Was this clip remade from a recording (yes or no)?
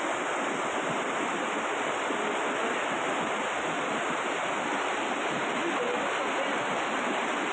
no